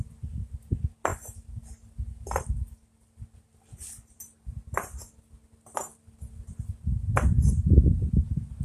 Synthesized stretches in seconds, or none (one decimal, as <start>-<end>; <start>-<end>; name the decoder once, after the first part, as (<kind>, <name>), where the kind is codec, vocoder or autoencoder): none